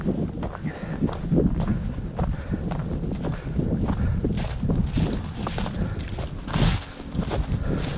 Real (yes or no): yes